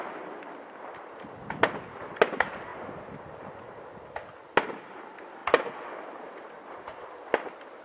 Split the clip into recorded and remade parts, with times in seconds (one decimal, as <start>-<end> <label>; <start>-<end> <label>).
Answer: 0.0-7.8 recorded